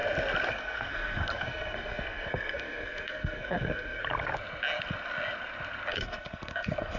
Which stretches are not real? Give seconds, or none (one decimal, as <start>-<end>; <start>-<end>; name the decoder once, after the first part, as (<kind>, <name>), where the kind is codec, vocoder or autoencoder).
0.5-4.0 (codec, SNAC); 5.9-7.0